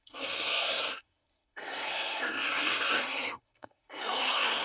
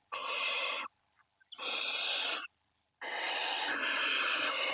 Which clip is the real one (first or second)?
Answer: second